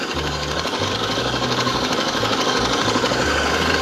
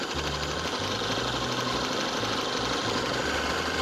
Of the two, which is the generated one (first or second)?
first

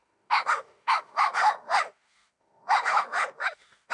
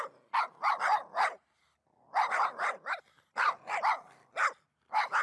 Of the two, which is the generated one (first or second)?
first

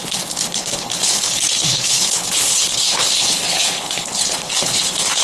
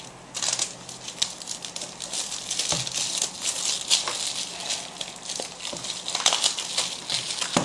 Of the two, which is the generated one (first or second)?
first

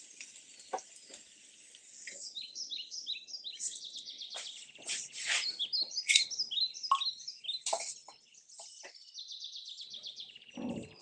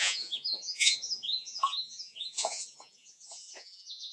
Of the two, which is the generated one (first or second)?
second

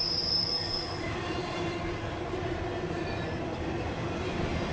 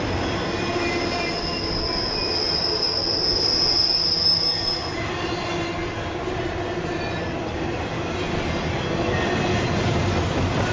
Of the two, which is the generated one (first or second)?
first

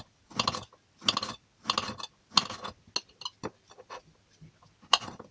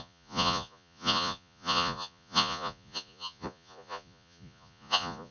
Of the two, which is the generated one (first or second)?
second